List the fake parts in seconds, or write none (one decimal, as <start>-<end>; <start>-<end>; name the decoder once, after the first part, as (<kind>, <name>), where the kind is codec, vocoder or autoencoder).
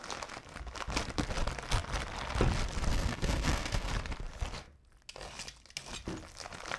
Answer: 2.9-3.9 (codec, SNAC)